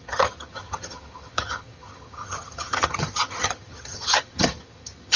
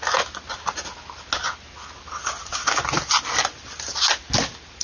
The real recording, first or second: second